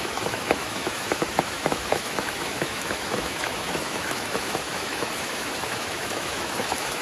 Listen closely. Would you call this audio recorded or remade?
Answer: remade